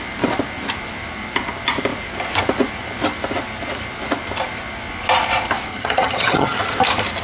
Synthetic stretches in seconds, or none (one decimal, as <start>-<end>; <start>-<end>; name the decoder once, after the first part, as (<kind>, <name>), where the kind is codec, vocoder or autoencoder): 5.7-6.6 (vocoder, HiFi-GAN)

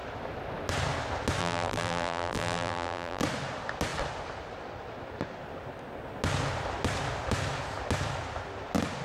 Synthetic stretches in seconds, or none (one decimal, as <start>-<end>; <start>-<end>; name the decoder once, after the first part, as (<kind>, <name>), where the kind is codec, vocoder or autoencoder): 1.4-3.2 (vocoder, BigVGAN v2)